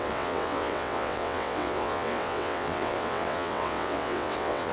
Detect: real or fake fake